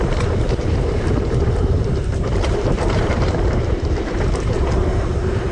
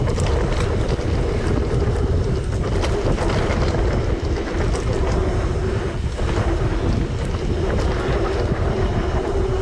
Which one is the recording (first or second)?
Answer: second